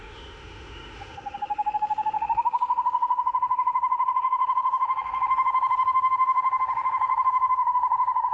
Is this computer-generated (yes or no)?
yes